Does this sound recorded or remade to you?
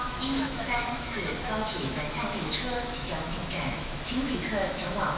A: remade